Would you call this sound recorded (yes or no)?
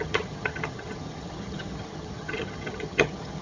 no